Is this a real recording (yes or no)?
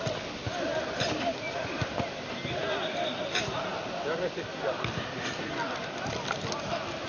yes